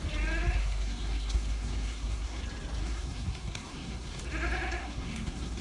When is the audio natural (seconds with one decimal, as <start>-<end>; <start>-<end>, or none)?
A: 0.0-0.6; 2.4-2.8; 4.2-4.8

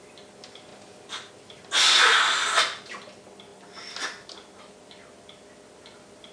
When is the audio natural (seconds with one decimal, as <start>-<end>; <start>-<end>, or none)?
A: 0.0-6.3